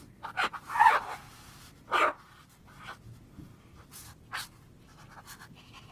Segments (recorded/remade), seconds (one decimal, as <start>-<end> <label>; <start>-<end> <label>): 0.0-2.1 recorded; 2.1-2.6 remade; 2.6-5.9 recorded